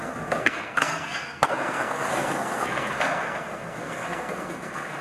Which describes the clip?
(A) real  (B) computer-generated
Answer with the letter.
B